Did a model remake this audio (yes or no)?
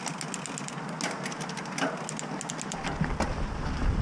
no